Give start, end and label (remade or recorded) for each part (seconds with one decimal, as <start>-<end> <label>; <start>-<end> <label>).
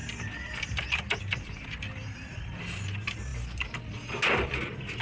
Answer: 0.0-5.0 recorded